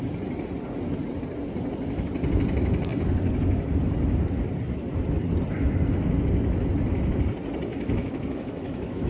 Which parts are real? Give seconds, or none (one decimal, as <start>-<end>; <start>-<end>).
0.0-7.7